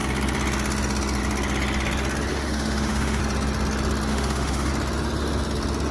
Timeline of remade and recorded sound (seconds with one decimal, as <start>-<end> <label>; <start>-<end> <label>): 0.0-2.3 recorded; 2.3-3.2 remade; 3.2-4.1 recorded; 4.1-4.7 remade; 4.7-5.9 recorded